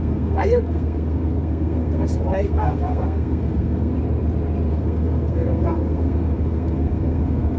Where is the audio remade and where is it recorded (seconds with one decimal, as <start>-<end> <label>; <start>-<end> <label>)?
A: 0.0-3.9 remade; 3.9-4.7 recorded; 4.7-7.6 remade